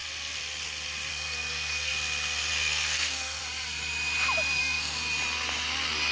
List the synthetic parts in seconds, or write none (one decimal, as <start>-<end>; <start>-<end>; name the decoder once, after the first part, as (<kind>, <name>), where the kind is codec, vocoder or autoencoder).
1.1-1.9 (codec, SNAC); 2.5-3.4; 4.6-5.0